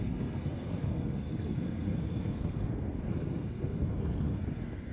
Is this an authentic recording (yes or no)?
no